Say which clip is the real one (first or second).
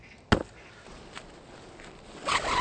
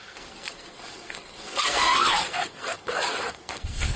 first